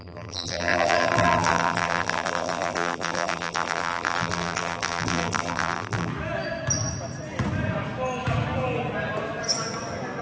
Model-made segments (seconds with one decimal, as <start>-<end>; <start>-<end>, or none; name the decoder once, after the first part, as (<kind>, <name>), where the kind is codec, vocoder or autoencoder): 0.0-6.1 (vocoder, BigVGAN v2)